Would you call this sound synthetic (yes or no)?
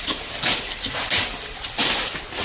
no